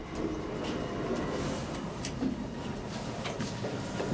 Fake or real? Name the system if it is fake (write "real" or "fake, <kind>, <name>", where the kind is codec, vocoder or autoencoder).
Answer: fake, vocoder, BigVGAN v2